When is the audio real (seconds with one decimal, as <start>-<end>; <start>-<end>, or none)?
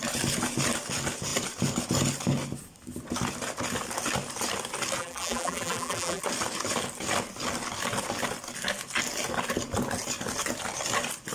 0.0-5.0; 6.2-11.3